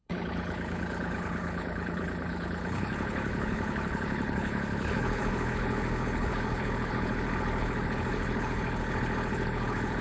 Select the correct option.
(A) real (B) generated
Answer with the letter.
B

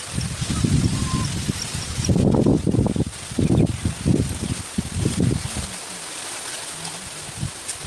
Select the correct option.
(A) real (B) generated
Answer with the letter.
A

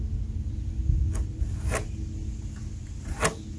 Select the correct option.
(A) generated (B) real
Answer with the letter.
B